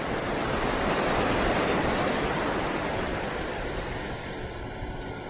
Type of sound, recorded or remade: recorded